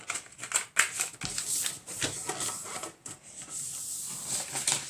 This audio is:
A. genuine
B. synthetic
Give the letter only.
A